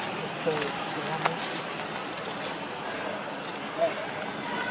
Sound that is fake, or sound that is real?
real